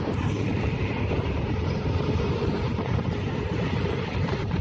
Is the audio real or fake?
fake